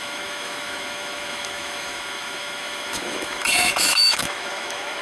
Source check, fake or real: fake